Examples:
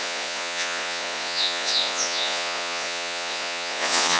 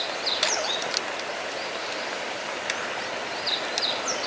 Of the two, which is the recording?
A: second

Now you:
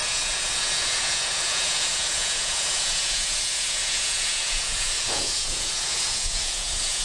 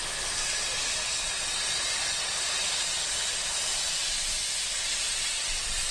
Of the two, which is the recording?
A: second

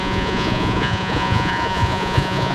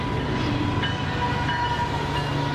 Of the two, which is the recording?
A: second